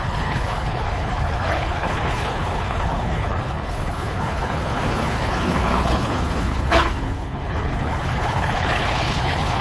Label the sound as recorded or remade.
remade